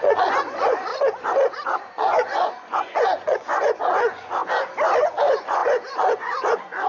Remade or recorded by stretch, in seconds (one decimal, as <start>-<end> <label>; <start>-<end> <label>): 0.0-0.9 remade; 0.9-1.8 recorded; 1.8-4.4 remade; 4.4-5.0 recorded; 5.0-6.9 remade